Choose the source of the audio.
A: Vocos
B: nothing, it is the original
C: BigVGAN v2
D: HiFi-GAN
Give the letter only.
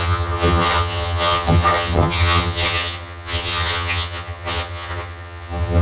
D